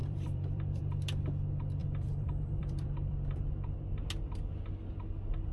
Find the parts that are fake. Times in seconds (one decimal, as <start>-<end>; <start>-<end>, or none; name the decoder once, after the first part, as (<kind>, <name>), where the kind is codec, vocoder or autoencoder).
0.0-0.8 (vocoder, BigVGAN v2); 1.8-3.5